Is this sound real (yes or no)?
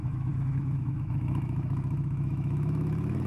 no